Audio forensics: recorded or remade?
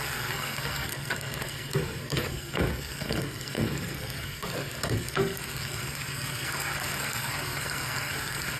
remade